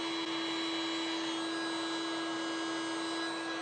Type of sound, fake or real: real